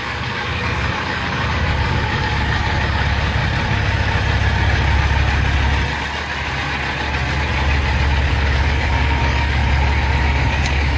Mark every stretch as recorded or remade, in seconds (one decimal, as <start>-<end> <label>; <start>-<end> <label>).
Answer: 0.0-3.4 remade; 3.4-8.3 recorded; 8.3-9.6 remade; 9.6-10.2 recorded; 10.2-11.0 remade